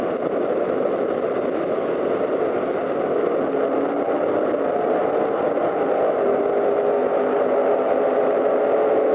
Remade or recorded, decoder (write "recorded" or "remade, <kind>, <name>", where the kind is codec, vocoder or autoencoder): recorded